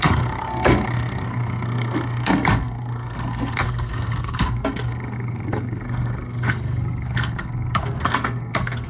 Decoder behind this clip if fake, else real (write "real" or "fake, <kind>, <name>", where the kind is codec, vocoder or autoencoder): fake, codec, SNAC